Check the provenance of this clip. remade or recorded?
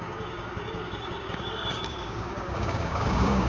remade